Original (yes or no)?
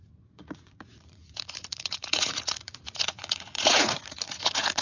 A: no